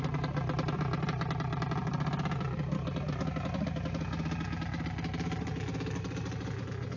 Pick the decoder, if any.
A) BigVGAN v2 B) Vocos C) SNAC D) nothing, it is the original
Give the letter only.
D